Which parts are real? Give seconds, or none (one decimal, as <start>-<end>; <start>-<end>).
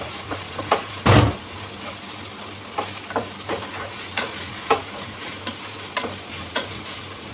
1.0-3.7; 5.3-6.3